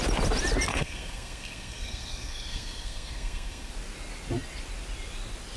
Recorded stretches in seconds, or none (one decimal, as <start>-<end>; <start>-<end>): 0.0-0.7; 3.7-5.6